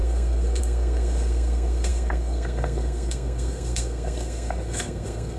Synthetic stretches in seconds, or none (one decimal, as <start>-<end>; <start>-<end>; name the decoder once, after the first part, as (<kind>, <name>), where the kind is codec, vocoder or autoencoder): 0.0-5.4 (codec, SNAC)